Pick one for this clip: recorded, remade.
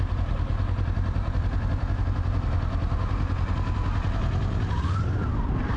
recorded